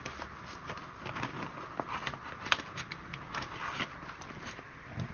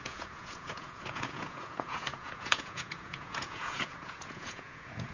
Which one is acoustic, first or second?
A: first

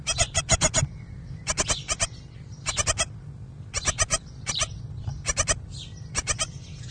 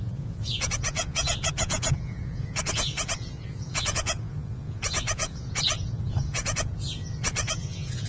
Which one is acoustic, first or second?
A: first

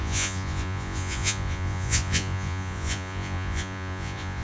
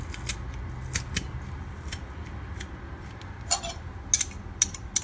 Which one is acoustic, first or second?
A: second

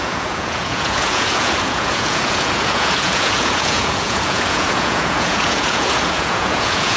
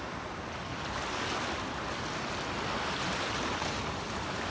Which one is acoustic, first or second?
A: second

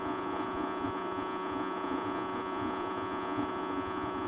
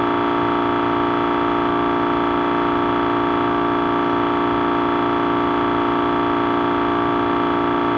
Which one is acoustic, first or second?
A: second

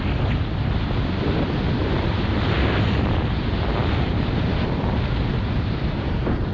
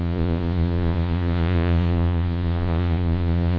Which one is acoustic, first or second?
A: first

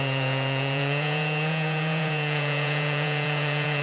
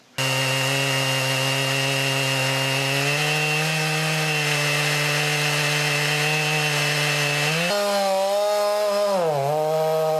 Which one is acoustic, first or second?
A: second